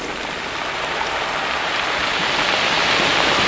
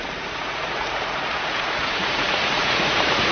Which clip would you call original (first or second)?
first